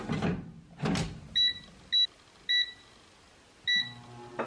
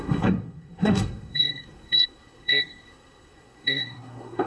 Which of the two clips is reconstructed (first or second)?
second